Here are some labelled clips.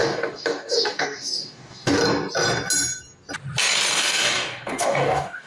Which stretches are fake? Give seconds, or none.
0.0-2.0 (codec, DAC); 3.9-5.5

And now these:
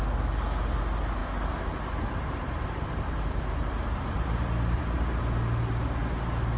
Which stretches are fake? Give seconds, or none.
1.2-5.2 (vocoder, BigVGAN v2)

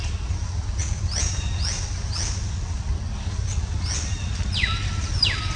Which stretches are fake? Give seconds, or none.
none

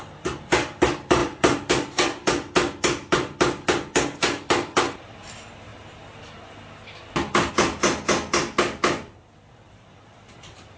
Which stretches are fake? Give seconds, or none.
0.0-5.7 (vocoder, BigVGAN v2); 7.5-10.8